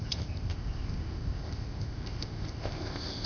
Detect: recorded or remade remade